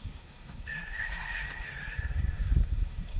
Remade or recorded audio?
remade